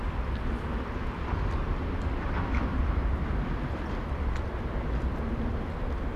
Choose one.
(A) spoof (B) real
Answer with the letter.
A